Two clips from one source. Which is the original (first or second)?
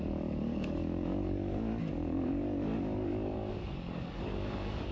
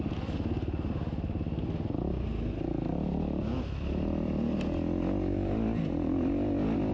second